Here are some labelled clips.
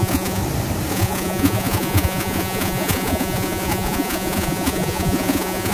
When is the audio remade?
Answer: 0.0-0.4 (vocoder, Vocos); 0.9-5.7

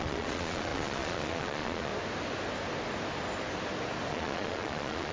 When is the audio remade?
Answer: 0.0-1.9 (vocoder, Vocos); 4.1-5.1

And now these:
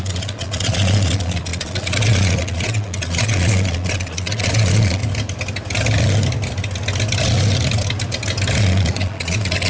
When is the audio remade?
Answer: 0.0-5.0 (vocoder, Vocos); 8.6-9.7

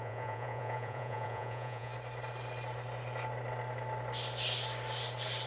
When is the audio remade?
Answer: 0.0-1.9 (vocoder, Vocos)